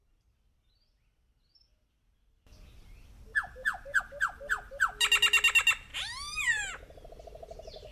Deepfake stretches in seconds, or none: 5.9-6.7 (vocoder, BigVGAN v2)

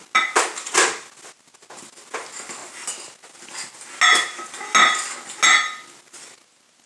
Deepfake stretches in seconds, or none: none

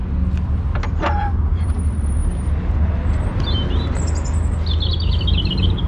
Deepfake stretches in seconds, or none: 1.2-2.2 (vocoder, BigVGAN v2); 5.2-5.9

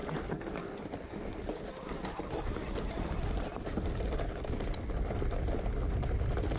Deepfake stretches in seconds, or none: none

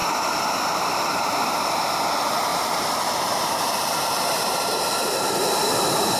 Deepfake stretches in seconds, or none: 0.0-1.7 (vocoder, BigVGAN v2); 2.5-5.4

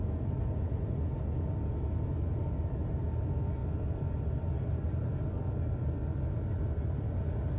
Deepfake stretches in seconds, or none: none

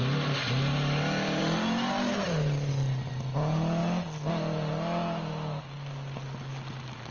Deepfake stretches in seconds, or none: 2.1-2.7 (vocoder, BigVGAN v2)

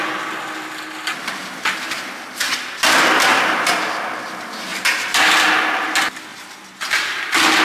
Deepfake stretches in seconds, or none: 4.7-5.2 (vocoder, BigVGAN v2); 6.3-7.6